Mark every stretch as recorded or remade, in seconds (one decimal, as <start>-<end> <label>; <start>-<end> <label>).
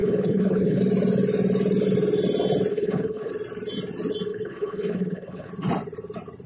0.0-0.8 remade; 0.8-2.7 recorded; 2.7-3.3 remade; 3.3-4.3 recorded; 4.3-5.5 remade; 5.5-6.5 recorded